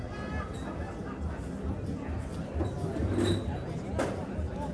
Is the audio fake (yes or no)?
no